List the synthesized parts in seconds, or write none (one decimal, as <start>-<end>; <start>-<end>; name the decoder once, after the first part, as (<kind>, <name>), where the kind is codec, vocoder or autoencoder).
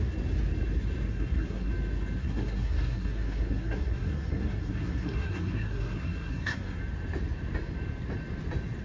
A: 1.1-1.7 (codec, SNAC); 2.2-6.8